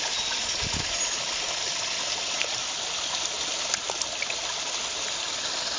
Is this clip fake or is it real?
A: real